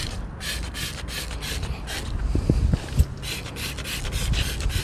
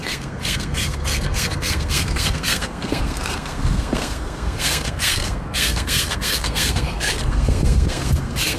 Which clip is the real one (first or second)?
first